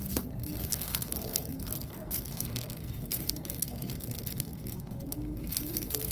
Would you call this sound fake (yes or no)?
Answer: yes